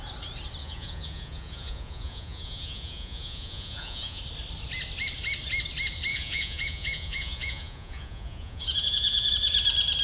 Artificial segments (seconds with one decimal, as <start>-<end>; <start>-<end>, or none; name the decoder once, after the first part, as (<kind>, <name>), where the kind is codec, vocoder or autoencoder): 0.6-4.2 (vocoder, Vocos); 6.1-9.3

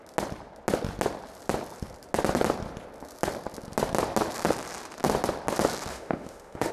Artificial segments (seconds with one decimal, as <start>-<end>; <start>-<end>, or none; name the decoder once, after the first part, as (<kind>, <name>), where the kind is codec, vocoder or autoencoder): 5.9-6.7 (autoencoder, DAC-VAE)